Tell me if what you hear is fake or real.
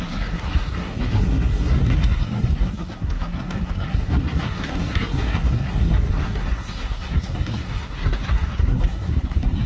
fake